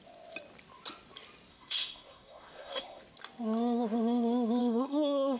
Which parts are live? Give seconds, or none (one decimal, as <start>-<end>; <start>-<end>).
0.0-1.5; 3.0-4.6

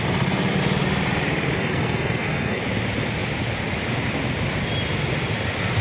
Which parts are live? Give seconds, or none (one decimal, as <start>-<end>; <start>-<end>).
0.0-1.6; 2.6-5.8